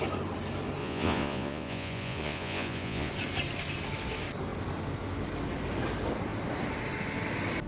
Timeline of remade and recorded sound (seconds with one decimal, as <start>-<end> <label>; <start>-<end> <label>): 0.0-0.8 recorded; 0.8-3.1 remade; 3.1-7.7 recorded